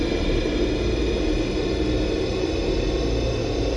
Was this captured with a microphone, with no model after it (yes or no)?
yes